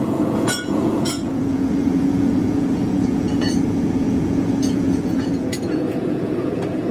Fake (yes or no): yes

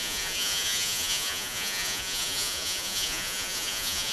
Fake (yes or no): yes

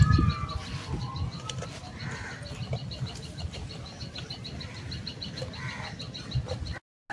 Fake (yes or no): no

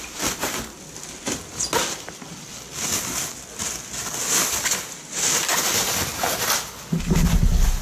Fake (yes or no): no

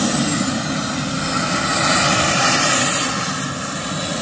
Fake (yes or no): no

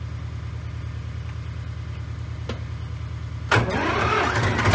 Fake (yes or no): no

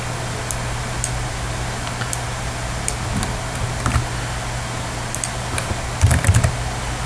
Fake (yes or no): no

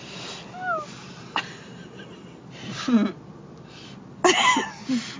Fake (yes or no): no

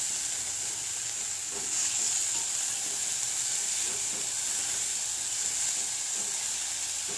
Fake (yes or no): no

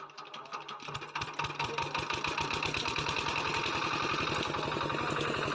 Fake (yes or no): no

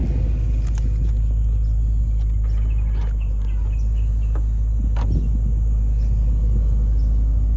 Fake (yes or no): no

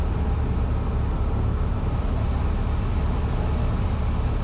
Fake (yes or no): no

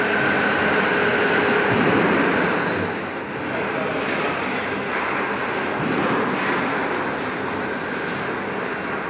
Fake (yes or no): yes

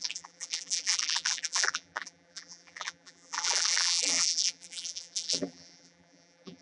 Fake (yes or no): yes